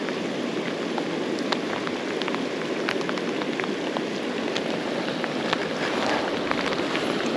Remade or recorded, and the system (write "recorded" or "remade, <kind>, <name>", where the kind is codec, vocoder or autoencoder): recorded